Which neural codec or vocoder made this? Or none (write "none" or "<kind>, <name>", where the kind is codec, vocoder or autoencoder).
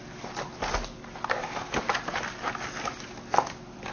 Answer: none